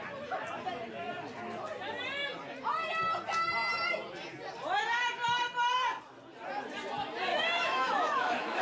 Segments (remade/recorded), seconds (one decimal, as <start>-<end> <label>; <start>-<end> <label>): 0.0-7.3 recorded; 7.3-8.6 remade